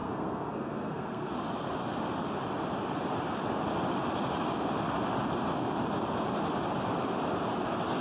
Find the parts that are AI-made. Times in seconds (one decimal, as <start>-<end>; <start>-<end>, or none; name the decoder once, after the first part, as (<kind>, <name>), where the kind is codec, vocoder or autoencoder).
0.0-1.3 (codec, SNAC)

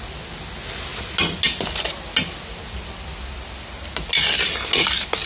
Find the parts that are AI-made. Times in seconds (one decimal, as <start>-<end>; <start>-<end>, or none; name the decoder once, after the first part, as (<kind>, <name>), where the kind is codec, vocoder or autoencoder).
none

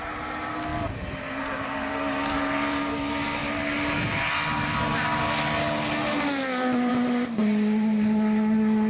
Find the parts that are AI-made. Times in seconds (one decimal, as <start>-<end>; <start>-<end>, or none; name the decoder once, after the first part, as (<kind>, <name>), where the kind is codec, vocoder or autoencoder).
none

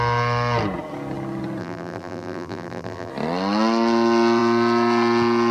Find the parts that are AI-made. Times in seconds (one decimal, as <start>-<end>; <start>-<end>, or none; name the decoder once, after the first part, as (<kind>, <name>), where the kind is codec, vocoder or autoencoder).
1.6-3.1 (vocoder, BigVGAN v2)

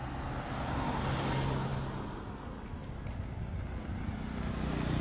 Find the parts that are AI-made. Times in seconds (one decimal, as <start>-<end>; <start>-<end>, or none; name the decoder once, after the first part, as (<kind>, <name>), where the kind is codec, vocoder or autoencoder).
none

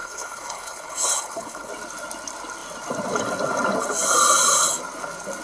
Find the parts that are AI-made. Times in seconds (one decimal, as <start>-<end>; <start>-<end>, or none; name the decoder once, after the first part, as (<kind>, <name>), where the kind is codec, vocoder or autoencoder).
0.0-1.7 (codec, HILCodec)